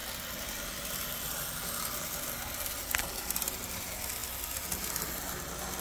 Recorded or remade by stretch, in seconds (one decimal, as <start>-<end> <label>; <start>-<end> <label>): 0.0-5.8 recorded